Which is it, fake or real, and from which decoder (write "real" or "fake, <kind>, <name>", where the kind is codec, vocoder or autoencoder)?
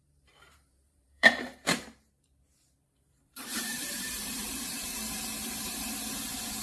fake, vocoder, BigVGAN v2